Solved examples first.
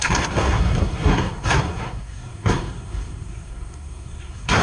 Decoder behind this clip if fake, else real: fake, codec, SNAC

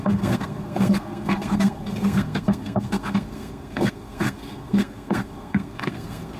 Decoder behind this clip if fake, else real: fake, codec, SNAC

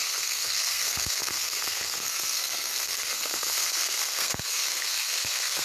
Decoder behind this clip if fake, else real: fake, codec, SNAC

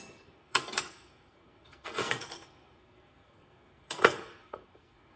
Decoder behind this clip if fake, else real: fake, codec, SNAC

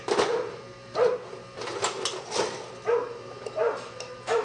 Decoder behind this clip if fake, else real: real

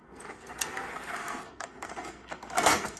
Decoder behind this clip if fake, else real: fake, codec, SNAC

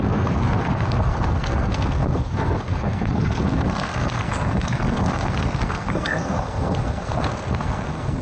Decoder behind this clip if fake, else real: fake, codec, SNAC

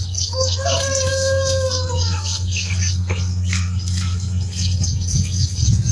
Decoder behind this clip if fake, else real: fake, codec, SNAC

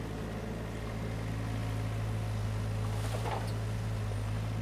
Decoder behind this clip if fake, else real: real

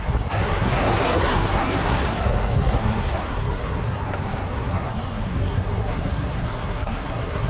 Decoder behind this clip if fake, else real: fake, codec, SNAC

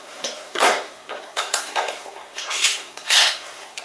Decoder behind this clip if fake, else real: fake, codec, SNAC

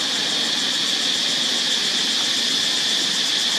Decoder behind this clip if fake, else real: real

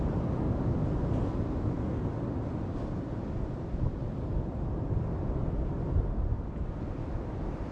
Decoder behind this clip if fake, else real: real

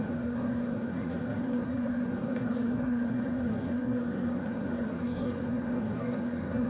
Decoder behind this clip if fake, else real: fake, codec, SNAC